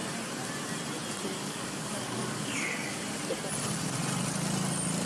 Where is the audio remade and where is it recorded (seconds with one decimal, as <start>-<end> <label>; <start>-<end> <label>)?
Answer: 0.0-1.4 recorded; 1.4-3.0 remade; 3.0-5.1 recorded